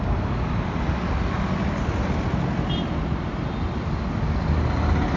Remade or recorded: recorded